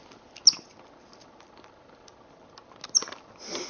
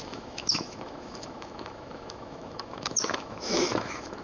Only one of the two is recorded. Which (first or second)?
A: first